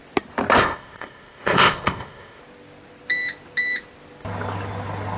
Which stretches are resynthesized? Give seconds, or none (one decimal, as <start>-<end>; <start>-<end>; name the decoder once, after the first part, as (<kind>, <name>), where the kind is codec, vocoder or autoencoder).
0.6-2.4 (codec, ZipCodec)